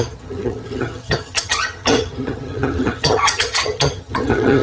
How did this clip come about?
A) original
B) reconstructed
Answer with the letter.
B